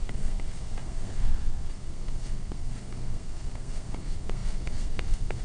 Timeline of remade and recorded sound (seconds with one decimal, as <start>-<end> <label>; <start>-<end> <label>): 0.0-5.4 remade